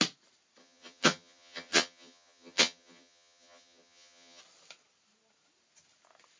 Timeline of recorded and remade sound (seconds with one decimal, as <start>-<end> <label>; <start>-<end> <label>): 0.0-0.6 recorded; 0.6-4.4 remade; 4.4-6.4 recorded